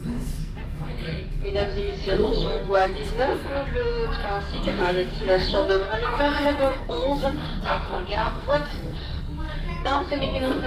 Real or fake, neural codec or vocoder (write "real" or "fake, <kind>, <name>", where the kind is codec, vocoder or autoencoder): fake, codec, SNAC